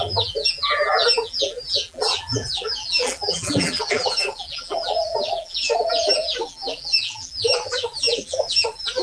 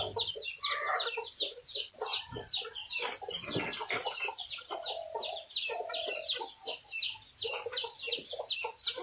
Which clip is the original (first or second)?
second